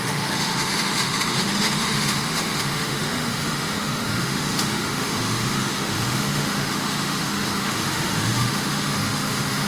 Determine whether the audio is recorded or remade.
remade